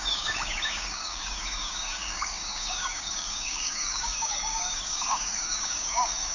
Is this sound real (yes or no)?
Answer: no